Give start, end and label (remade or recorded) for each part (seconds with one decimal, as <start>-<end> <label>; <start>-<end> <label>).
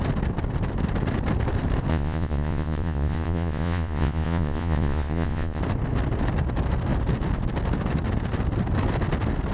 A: 0.0-1.9 recorded; 1.9-5.6 remade; 5.6-9.5 recorded